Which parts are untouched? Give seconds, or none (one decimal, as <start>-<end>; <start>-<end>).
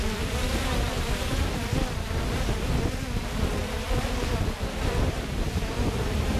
2.1-3.6